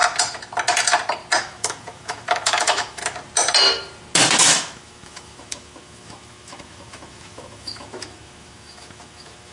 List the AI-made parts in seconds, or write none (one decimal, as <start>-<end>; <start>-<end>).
1.4-3.0; 4.4-9.5